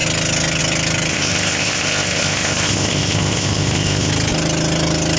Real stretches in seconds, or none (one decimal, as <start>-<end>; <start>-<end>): 0.0-1.1; 4.1-5.2

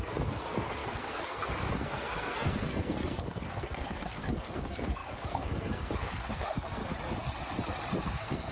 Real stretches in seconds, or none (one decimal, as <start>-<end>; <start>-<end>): 6.8-8.0

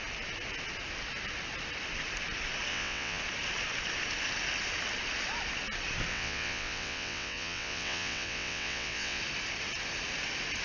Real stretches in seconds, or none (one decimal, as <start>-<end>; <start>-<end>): 0.0-2.7; 3.2-6.1; 9.2-10.6

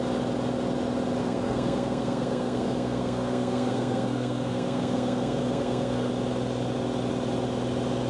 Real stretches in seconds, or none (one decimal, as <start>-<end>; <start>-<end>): 0.0-1.2; 6.1-8.1